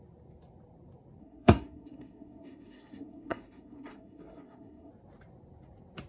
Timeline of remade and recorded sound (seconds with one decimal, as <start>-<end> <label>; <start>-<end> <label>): 0.0-1.2 recorded; 1.2-4.9 remade; 4.9-6.1 recorded